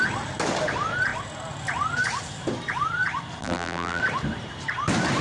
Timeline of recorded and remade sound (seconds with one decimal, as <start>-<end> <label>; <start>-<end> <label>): 0.0-3.4 recorded; 3.4-4.0 remade; 4.0-5.2 recorded

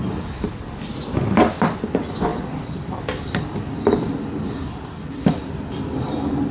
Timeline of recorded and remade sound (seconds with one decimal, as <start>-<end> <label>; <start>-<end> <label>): 0.0-2.3 recorded; 2.3-6.5 remade